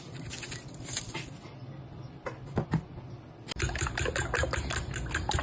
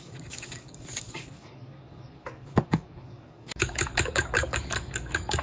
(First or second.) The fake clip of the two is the second